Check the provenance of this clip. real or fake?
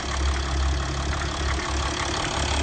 real